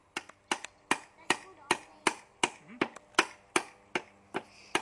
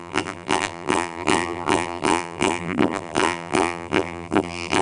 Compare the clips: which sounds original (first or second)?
first